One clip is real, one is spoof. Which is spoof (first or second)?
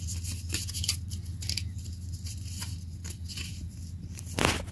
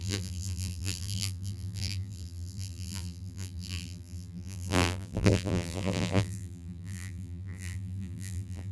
second